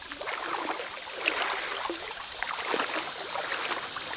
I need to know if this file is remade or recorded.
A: recorded